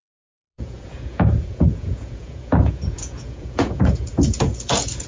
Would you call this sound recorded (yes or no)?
no